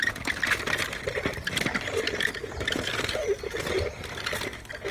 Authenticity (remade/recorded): recorded